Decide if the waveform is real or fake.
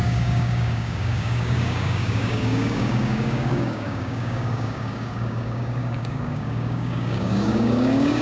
fake